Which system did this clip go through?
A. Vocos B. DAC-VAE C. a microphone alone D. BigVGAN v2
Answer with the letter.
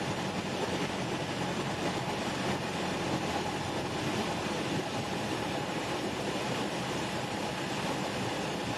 D